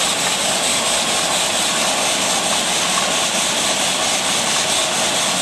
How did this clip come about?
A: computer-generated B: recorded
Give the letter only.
B